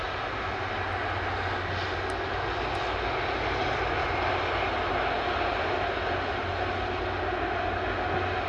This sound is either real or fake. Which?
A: real